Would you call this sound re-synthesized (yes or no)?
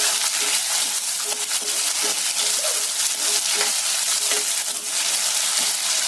no